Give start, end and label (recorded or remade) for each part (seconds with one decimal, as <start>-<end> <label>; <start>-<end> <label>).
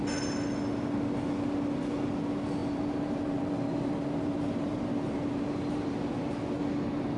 0.0-2.6 recorded; 2.6-6.0 remade; 6.0-7.2 recorded